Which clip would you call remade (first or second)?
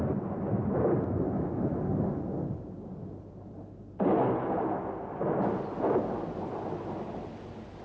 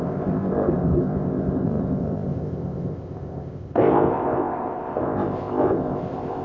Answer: second